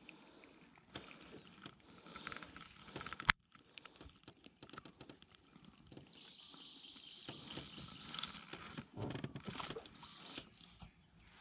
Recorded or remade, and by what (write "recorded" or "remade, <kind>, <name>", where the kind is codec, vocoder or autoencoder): recorded